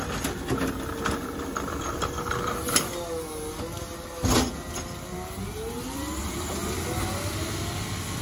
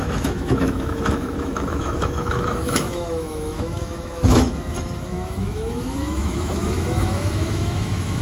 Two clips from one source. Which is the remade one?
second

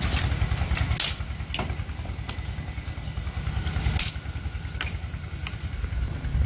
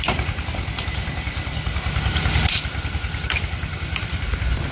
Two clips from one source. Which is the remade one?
second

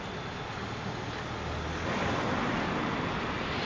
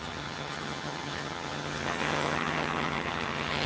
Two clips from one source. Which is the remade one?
second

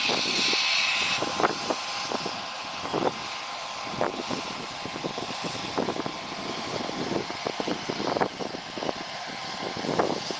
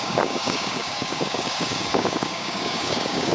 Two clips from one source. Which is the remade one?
second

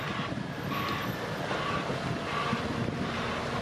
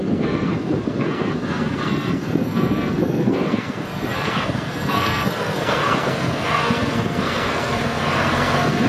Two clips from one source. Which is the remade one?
second